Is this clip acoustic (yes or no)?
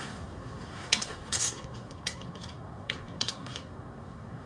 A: no